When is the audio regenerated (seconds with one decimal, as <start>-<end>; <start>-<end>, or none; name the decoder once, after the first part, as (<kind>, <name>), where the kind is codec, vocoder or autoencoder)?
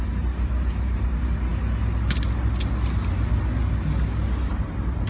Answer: none